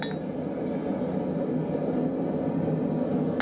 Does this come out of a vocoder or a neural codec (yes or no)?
no